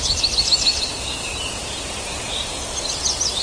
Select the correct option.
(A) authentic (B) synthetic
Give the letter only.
A